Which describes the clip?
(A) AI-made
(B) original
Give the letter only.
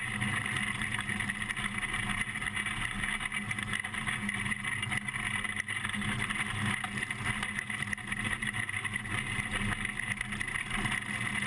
B